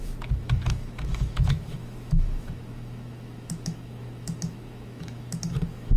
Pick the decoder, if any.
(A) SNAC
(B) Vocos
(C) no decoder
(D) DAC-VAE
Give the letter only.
D